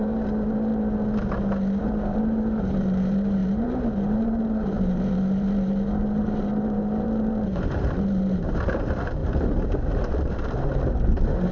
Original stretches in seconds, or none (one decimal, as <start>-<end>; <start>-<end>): 0.7-1.8